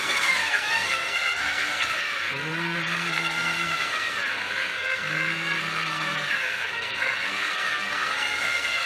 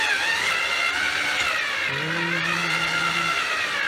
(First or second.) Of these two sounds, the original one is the second